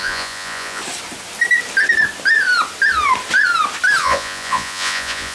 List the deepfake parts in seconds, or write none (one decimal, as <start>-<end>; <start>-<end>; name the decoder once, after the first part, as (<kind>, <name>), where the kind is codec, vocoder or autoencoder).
0.0-0.8 (vocoder, Vocos); 4.0-5.3